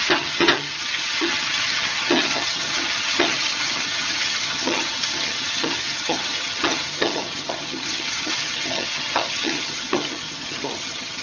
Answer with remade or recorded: remade